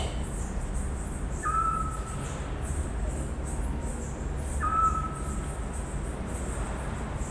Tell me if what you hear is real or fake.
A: real